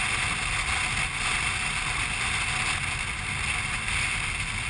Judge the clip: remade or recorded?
recorded